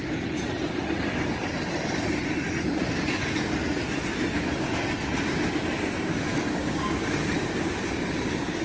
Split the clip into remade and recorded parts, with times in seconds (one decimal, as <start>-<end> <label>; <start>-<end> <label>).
0.0-6.6 recorded; 6.6-7.2 remade; 7.2-8.6 recorded